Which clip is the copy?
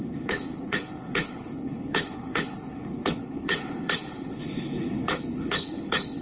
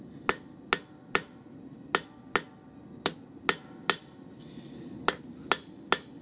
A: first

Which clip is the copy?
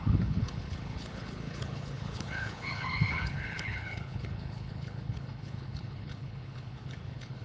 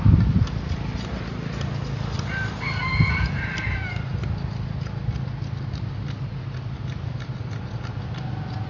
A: first